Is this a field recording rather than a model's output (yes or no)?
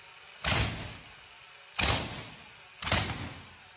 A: yes